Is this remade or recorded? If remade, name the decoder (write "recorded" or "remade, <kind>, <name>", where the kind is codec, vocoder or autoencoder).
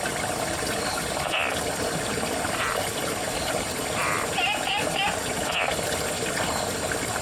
recorded